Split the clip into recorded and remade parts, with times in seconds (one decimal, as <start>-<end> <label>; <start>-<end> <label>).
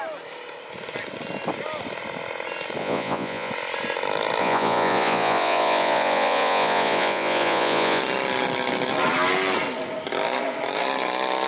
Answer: 0.0-2.8 recorded; 2.8-3.5 remade; 3.5-4.4 recorded; 4.4-8.0 remade; 8.0-11.5 recorded